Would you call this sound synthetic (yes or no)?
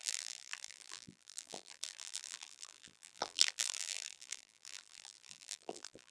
yes